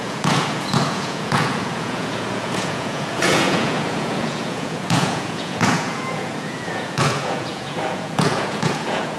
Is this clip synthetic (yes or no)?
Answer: yes